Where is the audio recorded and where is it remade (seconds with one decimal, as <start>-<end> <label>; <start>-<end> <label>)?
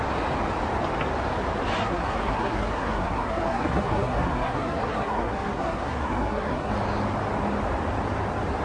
0.0-1.8 recorded; 1.8-6.7 remade; 6.7-8.6 recorded